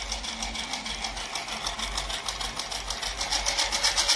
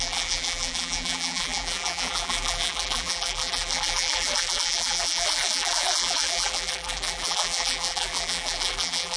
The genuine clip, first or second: first